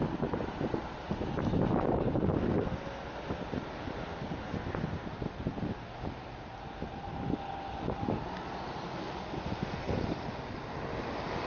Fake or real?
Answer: real